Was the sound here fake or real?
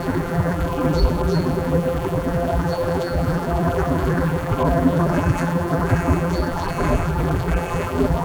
fake